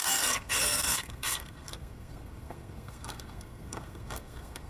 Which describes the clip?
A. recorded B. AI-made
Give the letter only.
B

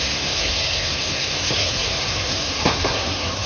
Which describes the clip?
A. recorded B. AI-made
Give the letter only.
B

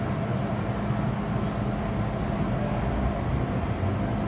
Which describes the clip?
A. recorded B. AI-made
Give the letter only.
A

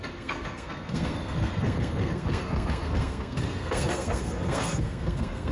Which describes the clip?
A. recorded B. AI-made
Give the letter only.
B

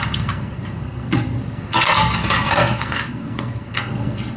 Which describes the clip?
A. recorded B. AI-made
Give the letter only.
B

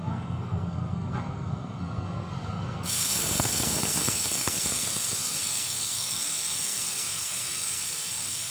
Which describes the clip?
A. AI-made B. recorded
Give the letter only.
A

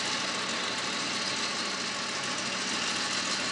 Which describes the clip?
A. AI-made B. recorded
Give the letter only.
B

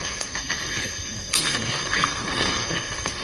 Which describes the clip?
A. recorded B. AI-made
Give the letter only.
B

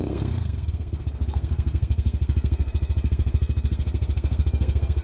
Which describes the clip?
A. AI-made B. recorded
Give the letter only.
A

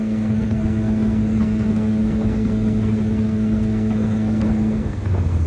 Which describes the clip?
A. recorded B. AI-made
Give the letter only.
B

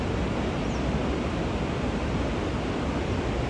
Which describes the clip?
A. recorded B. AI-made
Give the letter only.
A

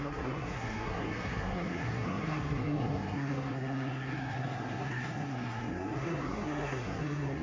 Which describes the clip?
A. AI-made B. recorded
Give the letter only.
A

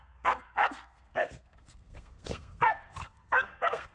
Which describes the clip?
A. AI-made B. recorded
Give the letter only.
A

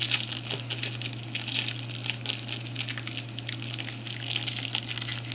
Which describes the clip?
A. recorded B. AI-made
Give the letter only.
A